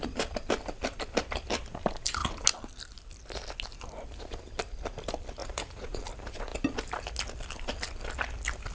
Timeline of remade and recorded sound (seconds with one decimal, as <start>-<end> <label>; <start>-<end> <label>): 0.0-5.4 recorded; 5.4-6.0 remade; 6.0-8.7 recorded